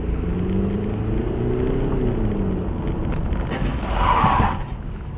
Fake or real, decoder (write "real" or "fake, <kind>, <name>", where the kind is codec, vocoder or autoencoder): real